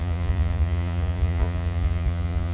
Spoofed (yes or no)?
yes